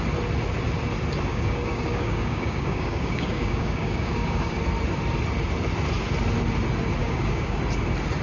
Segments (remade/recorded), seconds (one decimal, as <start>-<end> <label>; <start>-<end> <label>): 0.0-1.3 recorded; 1.3-4.6 remade; 4.6-7.0 recorded; 7.0-7.6 remade; 7.6-8.2 recorded